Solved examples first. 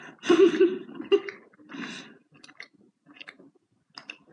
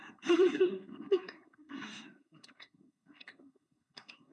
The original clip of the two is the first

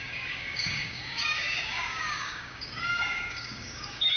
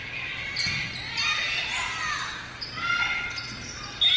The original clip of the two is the second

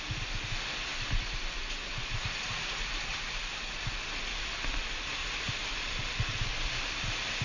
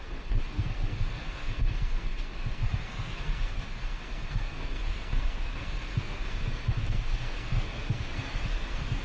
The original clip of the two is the first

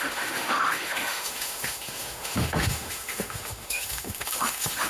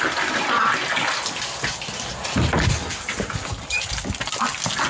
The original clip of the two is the second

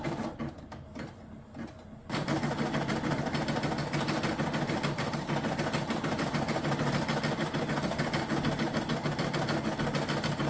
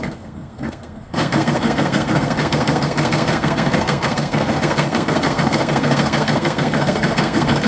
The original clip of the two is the first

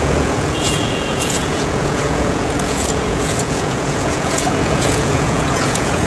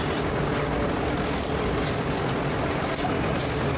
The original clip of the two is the second